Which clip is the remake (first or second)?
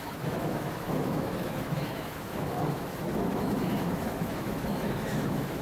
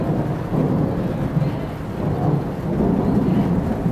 first